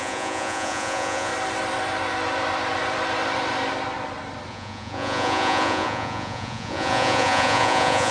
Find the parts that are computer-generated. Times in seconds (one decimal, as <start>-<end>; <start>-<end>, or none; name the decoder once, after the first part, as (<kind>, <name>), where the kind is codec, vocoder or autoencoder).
0.0-1.3 (vocoder, Vocos); 4.5-8.1